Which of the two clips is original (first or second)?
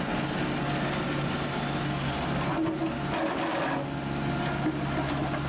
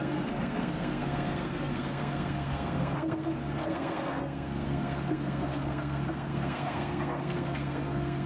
first